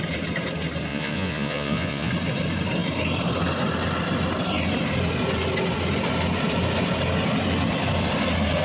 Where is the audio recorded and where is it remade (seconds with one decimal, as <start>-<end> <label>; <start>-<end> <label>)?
0.0-0.9 recorded; 0.9-2.1 remade; 2.1-8.6 recorded